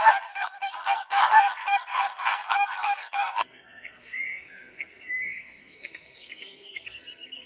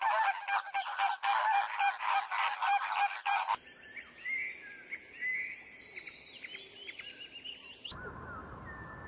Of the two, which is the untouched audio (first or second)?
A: second